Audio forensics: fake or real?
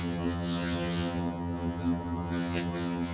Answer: fake